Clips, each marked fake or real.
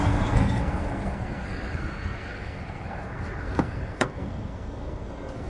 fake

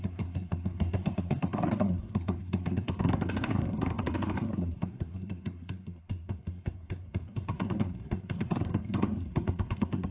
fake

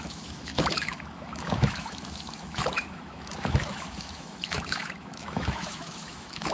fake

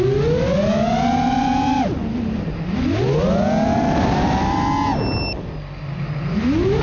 real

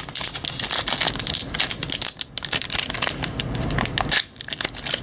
real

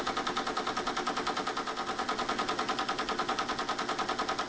real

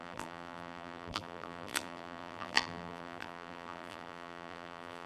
fake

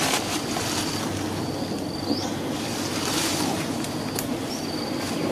real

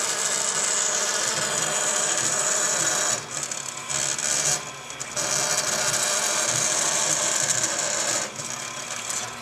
real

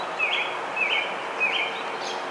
real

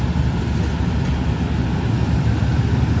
real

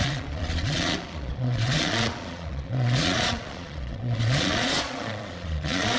fake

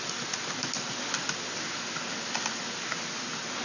real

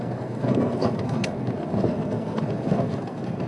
fake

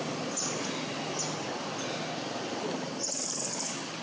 real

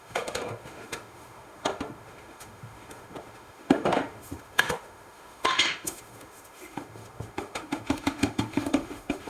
fake